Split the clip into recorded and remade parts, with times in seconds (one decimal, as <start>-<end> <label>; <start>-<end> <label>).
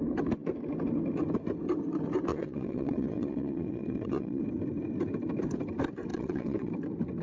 0.0-2.3 recorded; 2.3-4.4 remade; 4.4-6.1 recorded; 6.1-6.7 remade; 6.7-7.2 recorded